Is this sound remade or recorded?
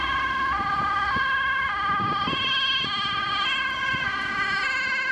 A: recorded